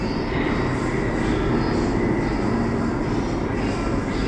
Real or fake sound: real